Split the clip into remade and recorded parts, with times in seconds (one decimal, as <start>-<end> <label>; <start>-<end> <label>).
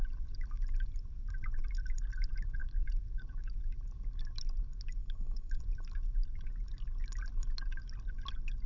0.0-5.0 recorded; 5.0-5.6 remade; 5.6-8.7 recorded